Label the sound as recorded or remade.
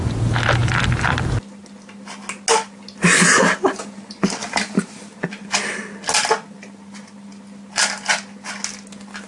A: recorded